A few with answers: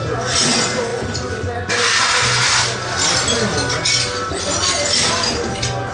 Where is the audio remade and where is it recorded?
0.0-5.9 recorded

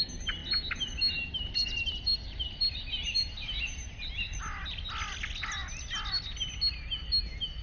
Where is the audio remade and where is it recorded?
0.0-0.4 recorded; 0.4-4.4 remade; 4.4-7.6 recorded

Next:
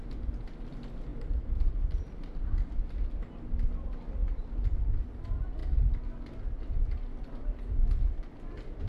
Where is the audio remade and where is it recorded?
0.0-8.9 recorded